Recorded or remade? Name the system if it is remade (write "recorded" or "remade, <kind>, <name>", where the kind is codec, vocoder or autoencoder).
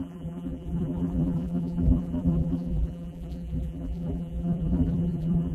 remade, vocoder, BigVGAN v2